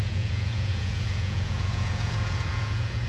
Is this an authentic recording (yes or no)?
no